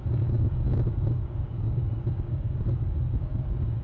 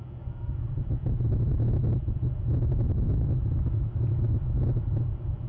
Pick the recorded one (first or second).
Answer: second